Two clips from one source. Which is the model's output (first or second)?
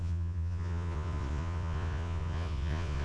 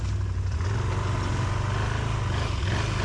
first